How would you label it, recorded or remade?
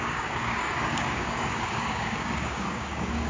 remade